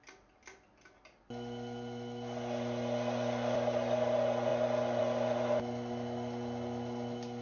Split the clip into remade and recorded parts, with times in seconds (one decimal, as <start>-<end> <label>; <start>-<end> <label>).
0.0-7.4 recorded